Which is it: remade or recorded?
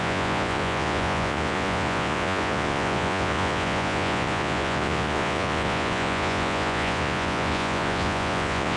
remade